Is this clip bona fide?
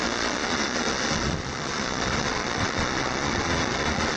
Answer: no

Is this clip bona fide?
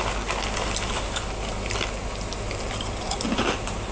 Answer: yes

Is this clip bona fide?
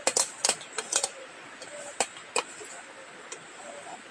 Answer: yes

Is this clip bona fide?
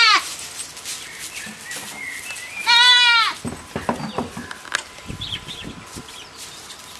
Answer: yes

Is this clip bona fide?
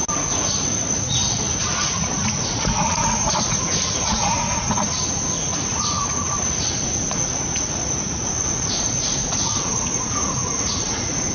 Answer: no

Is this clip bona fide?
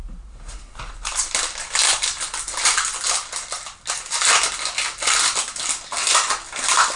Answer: yes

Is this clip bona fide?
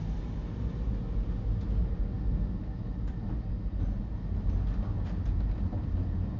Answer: yes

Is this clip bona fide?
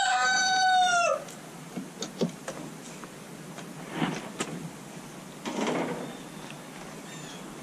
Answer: yes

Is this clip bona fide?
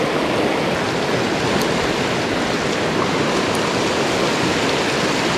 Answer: yes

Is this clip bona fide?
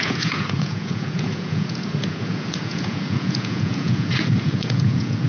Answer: no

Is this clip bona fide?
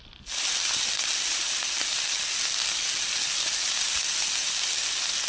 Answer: yes